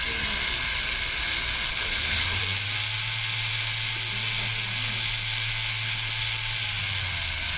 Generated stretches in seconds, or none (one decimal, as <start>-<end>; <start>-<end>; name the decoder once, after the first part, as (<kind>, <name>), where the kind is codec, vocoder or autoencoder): 1.7-2.4 (codec, HILCodec)